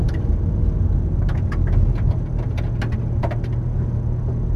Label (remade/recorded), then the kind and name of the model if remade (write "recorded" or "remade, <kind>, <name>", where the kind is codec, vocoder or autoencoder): recorded